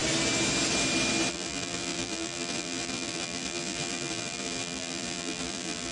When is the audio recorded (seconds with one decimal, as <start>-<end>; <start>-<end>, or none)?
0.0-1.3